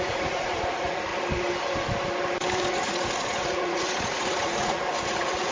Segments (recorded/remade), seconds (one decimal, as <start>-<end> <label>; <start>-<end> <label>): 0.0-1.1 remade; 1.1-2.7 recorded; 2.7-5.5 remade